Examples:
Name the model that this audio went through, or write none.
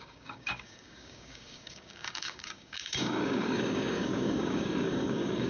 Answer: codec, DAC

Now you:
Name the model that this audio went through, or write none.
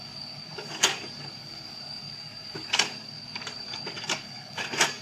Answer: codec, DAC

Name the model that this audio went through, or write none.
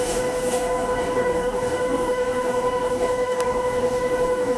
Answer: codec, DAC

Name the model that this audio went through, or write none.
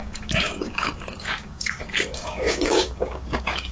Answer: codec, DAC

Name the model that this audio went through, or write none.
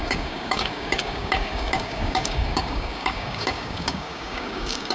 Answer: codec, DAC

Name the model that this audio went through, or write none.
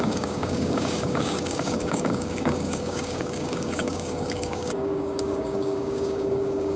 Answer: codec, DAC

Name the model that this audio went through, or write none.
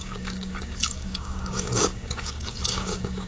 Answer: codec, DAC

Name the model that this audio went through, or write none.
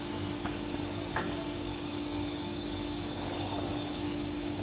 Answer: codec, DAC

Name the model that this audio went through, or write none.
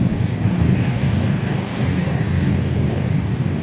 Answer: codec, DAC